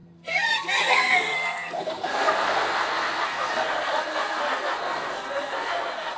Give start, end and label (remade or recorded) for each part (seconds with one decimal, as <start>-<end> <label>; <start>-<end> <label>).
0.0-6.2 remade